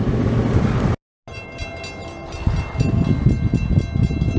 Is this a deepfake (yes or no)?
no